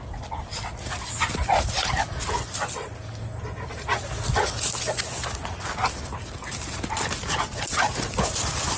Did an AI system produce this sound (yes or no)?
no